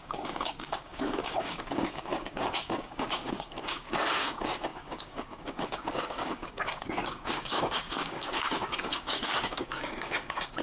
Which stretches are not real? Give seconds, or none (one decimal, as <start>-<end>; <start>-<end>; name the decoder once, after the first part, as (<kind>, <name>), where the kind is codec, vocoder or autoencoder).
0.0-10.6 (codec, DAC)